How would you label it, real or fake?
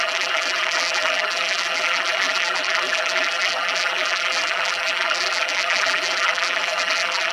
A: fake